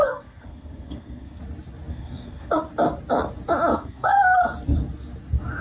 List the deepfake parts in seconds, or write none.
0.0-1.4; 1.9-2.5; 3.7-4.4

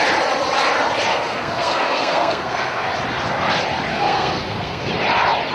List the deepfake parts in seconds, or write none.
1.1-2.9; 3.9-4.9